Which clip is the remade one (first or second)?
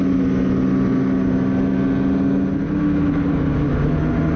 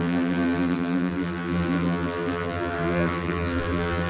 second